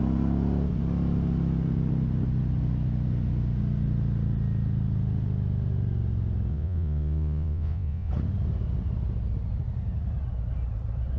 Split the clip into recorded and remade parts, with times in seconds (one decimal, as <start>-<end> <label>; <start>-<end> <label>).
0.0-6.5 recorded; 6.5-8.1 remade; 8.1-11.2 recorded